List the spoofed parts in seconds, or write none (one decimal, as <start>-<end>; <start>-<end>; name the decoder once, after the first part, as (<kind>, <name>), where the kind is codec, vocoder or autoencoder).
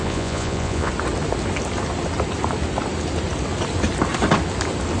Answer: 0.0-0.9 (vocoder, Vocos)